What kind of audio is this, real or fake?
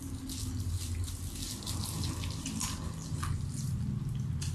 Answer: real